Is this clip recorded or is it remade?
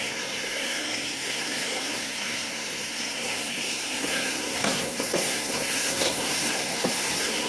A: remade